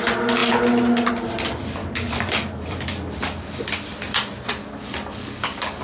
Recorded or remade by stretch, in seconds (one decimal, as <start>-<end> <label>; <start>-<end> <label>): 0.0-1.8 recorded; 1.8-3.6 remade; 3.6-4.6 recorded; 4.6-5.8 remade